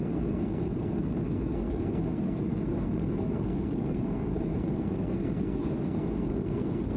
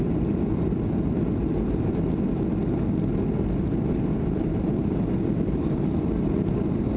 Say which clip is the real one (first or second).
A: second